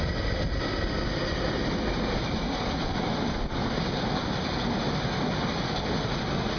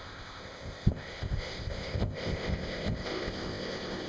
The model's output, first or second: second